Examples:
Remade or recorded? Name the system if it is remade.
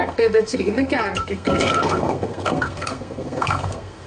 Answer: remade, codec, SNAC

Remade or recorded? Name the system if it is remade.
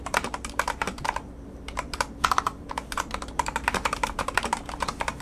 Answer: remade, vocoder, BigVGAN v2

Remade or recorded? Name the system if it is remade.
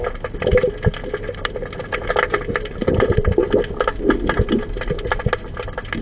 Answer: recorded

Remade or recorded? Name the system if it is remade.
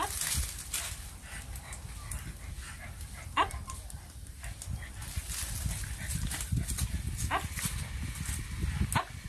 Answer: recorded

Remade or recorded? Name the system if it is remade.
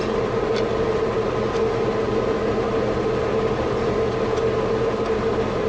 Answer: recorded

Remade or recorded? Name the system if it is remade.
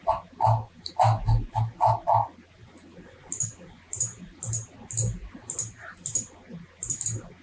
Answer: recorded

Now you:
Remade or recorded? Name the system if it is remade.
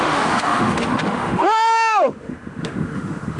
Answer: remade, autoencoder, DAC-VAE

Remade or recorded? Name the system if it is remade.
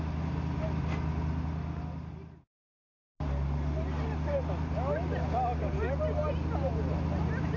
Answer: recorded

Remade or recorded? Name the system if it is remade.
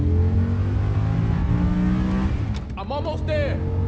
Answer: recorded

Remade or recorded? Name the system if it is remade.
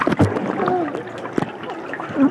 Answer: recorded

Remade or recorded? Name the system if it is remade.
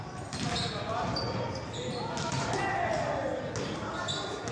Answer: recorded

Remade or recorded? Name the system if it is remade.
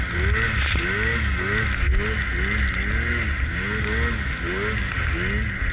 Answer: recorded